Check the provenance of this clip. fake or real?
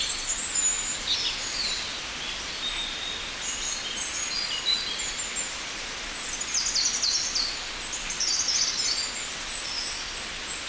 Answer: real